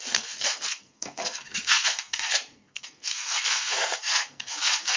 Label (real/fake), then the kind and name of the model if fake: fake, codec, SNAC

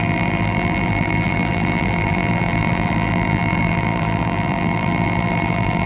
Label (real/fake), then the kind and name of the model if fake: fake, vocoder, BigVGAN v2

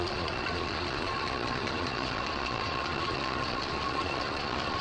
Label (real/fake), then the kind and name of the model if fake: fake, vocoder, Vocos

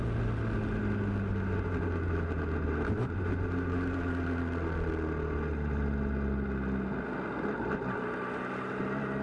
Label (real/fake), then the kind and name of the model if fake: real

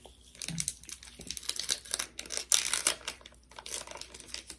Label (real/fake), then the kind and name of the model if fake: real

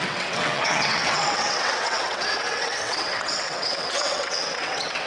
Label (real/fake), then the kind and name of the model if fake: fake, vocoder, WaveNeXt